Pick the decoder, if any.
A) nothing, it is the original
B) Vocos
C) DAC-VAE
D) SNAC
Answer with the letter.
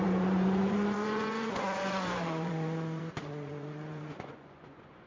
B